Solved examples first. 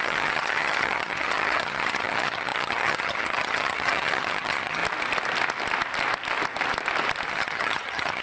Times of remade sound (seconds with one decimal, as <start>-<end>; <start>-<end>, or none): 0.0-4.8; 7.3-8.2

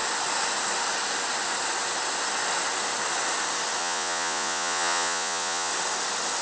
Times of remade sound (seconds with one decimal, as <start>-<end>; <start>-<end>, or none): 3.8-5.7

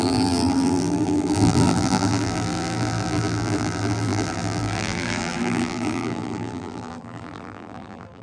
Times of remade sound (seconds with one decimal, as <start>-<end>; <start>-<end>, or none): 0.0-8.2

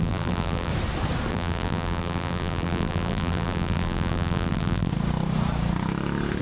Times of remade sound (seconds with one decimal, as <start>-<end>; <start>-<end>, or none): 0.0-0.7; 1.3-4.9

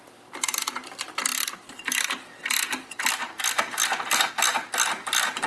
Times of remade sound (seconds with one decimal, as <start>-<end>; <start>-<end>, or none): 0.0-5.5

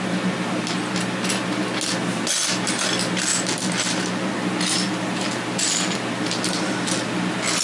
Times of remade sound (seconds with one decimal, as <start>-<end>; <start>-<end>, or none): none

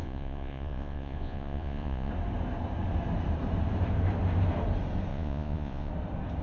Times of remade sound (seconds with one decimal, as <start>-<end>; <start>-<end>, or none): 0.0-2.1; 5.1-5.9